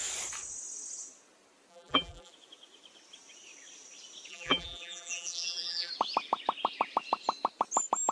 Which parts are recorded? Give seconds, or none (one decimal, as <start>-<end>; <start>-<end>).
0.0-1.7; 2.3-4.3; 5.9-8.1